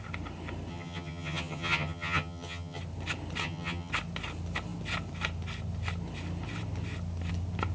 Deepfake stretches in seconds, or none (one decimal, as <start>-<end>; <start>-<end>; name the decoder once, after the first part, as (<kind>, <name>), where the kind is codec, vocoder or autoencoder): 0.7-2.8 (vocoder, HiFi-GAN); 3.4-3.9